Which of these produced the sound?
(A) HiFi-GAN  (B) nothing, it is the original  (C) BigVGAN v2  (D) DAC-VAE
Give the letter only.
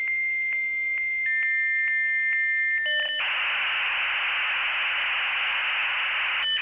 B